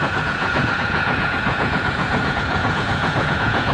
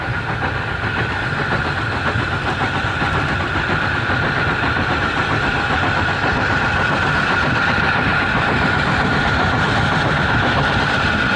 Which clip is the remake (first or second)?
first